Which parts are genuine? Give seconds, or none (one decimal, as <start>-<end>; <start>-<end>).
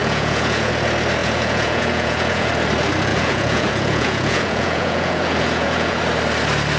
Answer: 0.7-1.2; 2.5-3.1; 6.0-6.8